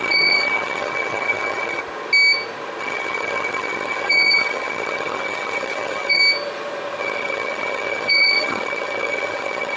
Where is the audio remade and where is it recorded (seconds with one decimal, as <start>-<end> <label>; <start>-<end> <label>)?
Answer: 0.0-1.8 remade; 1.8-2.8 recorded; 2.8-6.2 remade; 6.2-7.0 recorded; 7.0-9.8 remade